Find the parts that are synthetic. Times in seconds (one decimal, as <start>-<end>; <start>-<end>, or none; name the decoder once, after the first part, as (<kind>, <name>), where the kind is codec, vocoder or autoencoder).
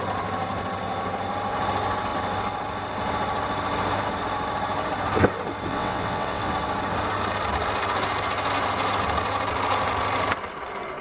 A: 5.7-6.5 (vocoder, WaveNeXt)